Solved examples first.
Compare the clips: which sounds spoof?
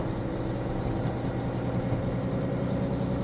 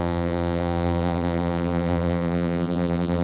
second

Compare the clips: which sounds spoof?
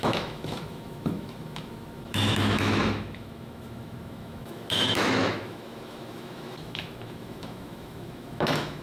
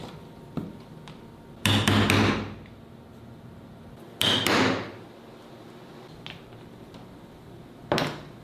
first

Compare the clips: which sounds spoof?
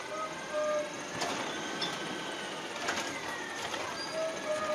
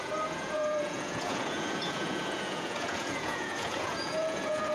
second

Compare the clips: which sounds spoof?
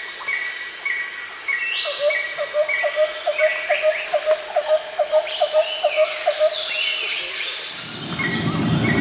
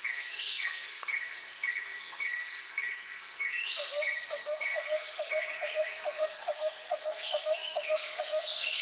second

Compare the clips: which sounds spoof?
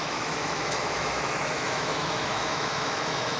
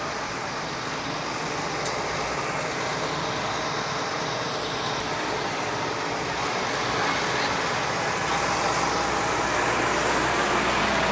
first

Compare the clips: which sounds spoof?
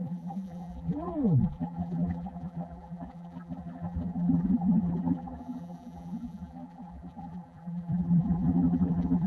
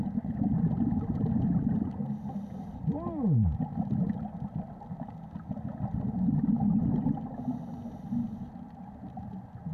first